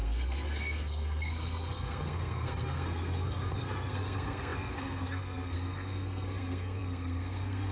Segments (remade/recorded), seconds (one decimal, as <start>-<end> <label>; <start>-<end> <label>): 0.0-7.7 remade